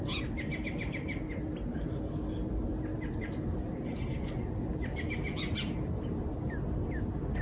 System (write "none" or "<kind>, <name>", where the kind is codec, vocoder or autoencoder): none